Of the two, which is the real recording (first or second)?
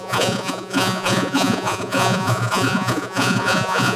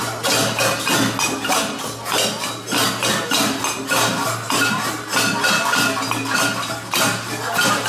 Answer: second